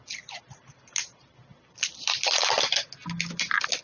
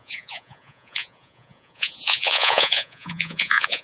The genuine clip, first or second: first